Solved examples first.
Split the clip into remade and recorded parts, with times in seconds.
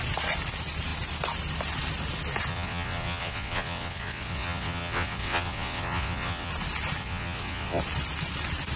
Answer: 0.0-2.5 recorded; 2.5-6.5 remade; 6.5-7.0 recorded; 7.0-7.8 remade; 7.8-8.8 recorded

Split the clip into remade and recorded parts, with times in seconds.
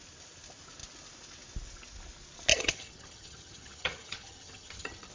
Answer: 0.0-2.5 recorded; 2.5-5.1 remade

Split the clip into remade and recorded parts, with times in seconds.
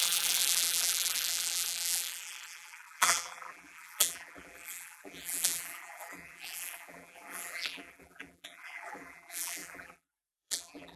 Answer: 0.0-11.0 remade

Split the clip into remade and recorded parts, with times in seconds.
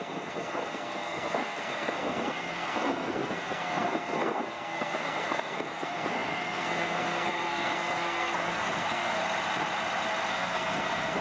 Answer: 0.0-9.2 remade; 9.2-10.3 recorded; 10.3-11.2 remade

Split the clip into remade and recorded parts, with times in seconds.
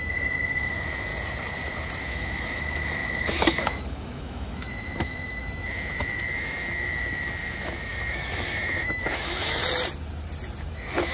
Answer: 0.0-1.1 remade; 1.1-2.0 recorded; 2.0-9.6 remade; 9.6-10.7 recorded; 10.7-11.1 remade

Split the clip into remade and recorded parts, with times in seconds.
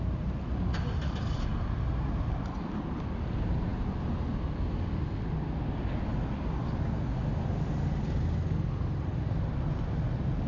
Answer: 0.0-10.5 recorded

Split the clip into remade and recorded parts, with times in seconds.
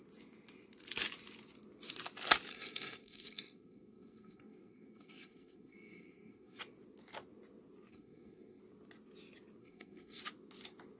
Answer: 0.0-2.5 recorded; 2.5-6.6 remade; 6.6-7.9 recorded; 7.9-8.6 remade; 8.6-9.6 recorded; 9.6-10.2 remade; 10.2-11.0 recorded